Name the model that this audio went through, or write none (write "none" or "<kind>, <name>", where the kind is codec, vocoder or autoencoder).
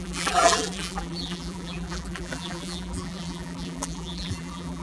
vocoder, BigVGAN v2